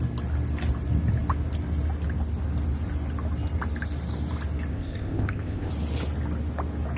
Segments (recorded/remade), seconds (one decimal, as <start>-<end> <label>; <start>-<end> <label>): 0.0-4.7 recorded; 4.7-5.7 remade; 5.7-7.0 recorded